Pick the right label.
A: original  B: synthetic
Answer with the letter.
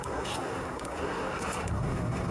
B